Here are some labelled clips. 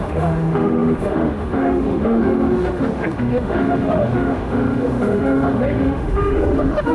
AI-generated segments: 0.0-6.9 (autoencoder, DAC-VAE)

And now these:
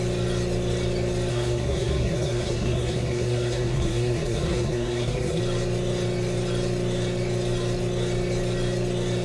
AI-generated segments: 1.3-5.4 (codec, SNAC)

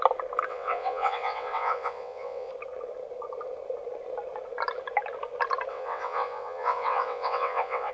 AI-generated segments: 0.5-2.5 (vocoder, WaveNeXt); 5.7-7.9

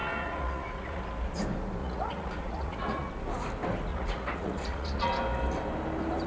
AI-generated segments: 0.0-1.0 (vocoder, Vocos); 1.8-3.1; 3.9-5.1

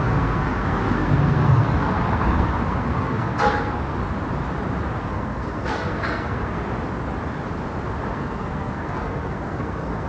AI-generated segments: 0.0-4.0 (codec, SNAC); 5.0-6.6; 8.1-10.1

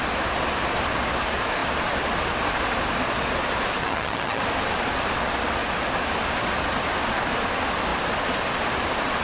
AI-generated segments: 3.8-4.4 (vocoder, HiFi-GAN)